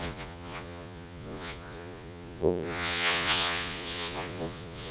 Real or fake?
fake